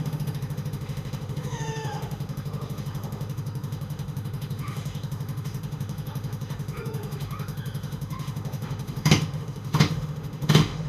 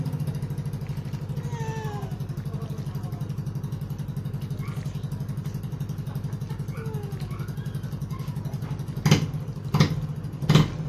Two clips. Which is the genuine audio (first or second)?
second